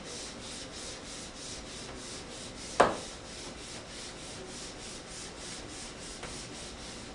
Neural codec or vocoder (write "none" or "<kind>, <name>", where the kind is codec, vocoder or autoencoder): none